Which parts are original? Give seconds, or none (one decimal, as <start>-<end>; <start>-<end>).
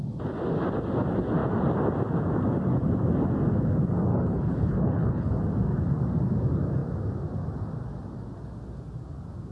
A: 0.0-4.1; 5.3-9.5